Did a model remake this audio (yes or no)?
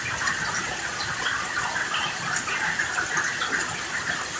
no